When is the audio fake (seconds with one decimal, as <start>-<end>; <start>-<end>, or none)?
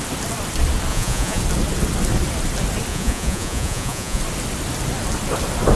0.9-1.4; 2.9-4.2